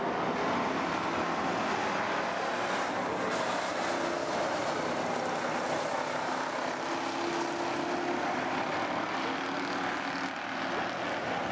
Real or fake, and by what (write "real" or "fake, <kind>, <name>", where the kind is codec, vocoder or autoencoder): real